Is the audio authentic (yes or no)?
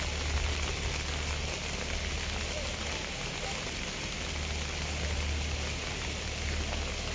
yes